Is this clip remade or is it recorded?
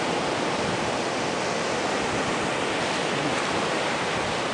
recorded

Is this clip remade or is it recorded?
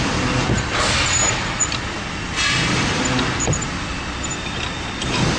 recorded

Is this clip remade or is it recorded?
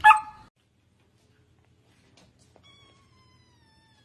recorded